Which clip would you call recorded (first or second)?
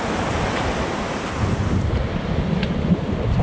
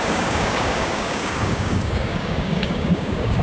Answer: first